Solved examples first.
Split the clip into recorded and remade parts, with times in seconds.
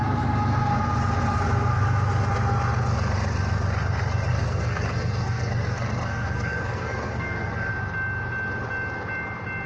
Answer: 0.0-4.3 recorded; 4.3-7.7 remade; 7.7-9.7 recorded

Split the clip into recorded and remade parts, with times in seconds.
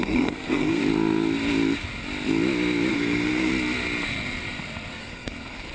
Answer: 0.0-0.8 remade; 0.8-2.9 recorded; 2.9-3.5 remade; 3.5-5.0 recorded; 5.0-5.7 remade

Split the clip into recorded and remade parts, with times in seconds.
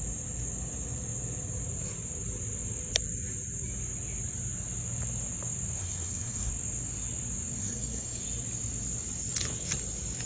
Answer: 0.0-5.8 recorded; 5.8-6.5 remade; 6.5-7.6 recorded; 7.6-8.2 remade; 8.2-10.3 recorded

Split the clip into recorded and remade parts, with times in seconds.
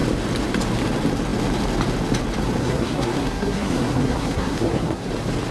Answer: 0.0-2.6 recorded; 2.6-5.1 remade; 5.1-5.5 recorded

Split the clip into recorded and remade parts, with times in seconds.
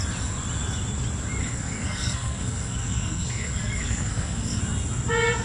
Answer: 0.0-1.4 recorded; 1.4-4.6 remade; 4.6-5.4 recorded